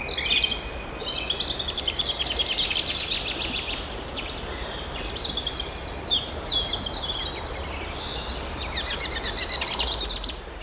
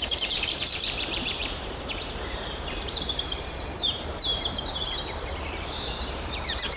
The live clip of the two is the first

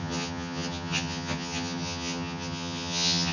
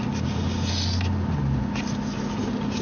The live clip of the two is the second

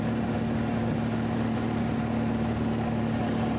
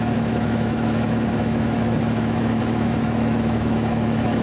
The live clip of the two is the first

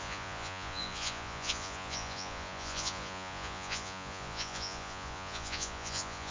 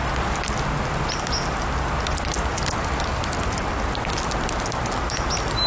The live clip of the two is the second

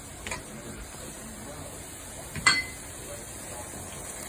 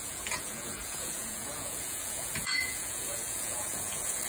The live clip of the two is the first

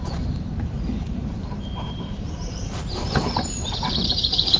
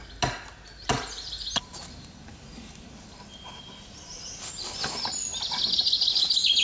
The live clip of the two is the second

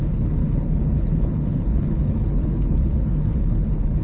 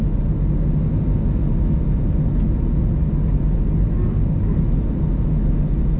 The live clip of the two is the second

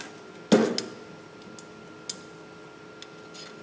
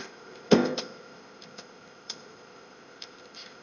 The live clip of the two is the first